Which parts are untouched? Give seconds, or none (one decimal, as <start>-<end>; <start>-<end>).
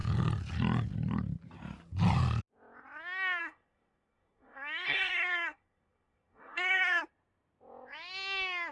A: 0.0-3.4; 7.0-8.7